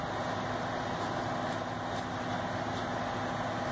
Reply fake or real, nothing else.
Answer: real